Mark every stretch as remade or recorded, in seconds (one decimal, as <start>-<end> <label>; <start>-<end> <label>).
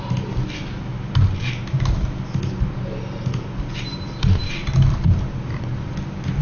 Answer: 0.0-6.4 recorded